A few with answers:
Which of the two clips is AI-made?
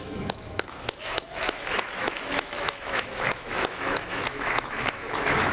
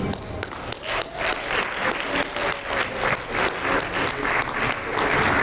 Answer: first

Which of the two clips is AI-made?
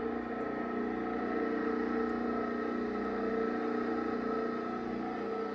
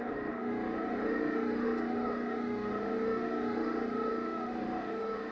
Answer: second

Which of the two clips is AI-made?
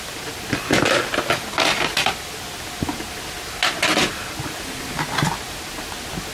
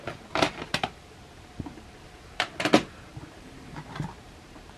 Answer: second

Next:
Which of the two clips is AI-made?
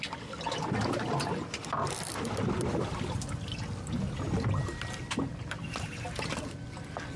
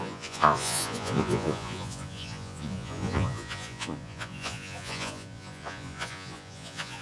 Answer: second